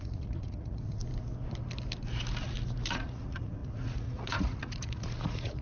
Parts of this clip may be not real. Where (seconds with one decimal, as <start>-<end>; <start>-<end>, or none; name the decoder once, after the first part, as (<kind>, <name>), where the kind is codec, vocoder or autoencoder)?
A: 0.0-1.0 (vocoder, Vocos); 2.9-5.6